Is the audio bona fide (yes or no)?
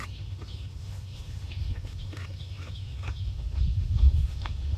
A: no